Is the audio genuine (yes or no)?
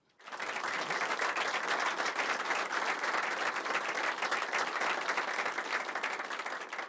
yes